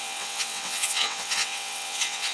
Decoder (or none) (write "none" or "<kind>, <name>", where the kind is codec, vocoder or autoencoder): vocoder, WaveNeXt